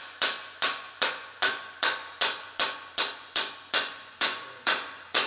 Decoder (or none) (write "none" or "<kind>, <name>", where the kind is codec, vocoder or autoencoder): vocoder, Vocos